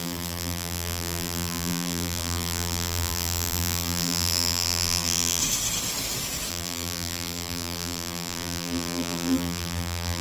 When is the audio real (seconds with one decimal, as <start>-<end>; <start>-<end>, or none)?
5.4-6.5